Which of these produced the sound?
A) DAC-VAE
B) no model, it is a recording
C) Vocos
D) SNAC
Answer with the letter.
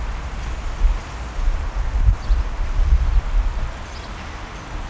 B